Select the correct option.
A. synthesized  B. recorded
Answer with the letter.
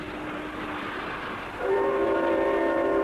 A